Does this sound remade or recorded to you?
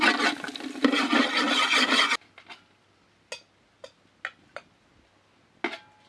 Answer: recorded